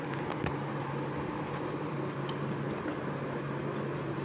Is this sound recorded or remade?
recorded